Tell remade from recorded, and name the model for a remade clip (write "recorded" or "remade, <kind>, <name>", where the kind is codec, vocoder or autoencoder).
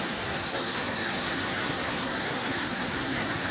remade, codec, SNAC